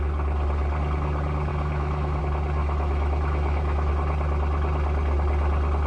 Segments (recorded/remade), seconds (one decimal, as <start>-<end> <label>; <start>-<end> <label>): 0.0-1.5 recorded; 1.5-2.2 remade; 2.2-2.6 recorded; 2.6-3.9 remade; 3.9-5.9 recorded